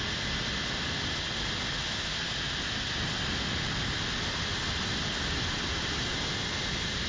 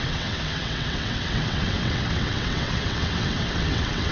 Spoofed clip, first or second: second